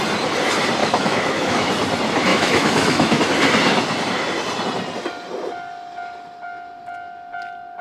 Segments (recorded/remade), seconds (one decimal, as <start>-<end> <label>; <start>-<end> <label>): 0.0-0.8 recorded; 0.8-1.7 remade; 1.7-2.3 recorded; 2.3-3.2 remade; 3.2-7.8 recorded